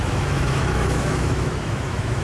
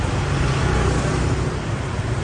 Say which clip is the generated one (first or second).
first